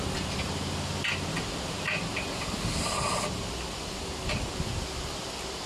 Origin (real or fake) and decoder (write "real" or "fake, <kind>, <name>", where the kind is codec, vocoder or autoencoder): fake, vocoder, BigVGAN v2